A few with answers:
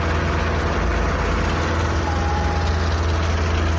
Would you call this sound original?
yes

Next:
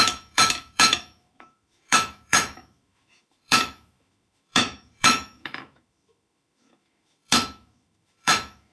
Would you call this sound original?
no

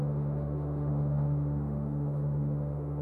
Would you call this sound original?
no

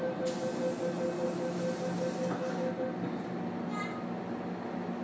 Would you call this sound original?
yes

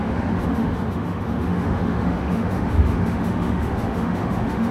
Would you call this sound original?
no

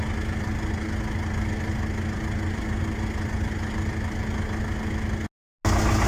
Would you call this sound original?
yes